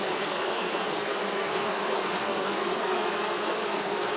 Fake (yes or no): yes